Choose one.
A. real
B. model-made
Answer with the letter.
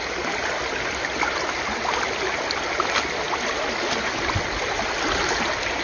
A